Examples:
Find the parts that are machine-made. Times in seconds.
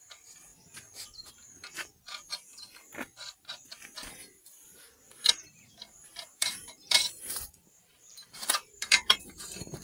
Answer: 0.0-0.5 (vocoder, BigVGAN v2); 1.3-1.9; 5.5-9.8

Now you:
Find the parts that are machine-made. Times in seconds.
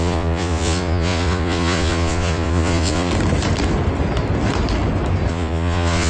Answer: 0.0-3.1 (vocoder, Vocos); 5.3-6.1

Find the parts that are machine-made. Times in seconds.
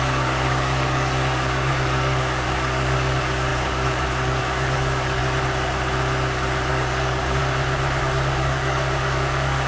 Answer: 0.0-5.2 (codec, DAC); 6.7-7.4; 8.0-9.7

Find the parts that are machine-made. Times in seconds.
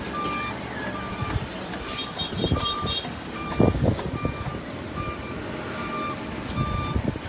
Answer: 1.1-3.5 (vocoder, BigVGAN v2); 4.5-5.9